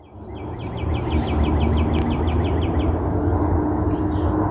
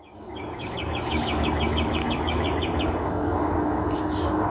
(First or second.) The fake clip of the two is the second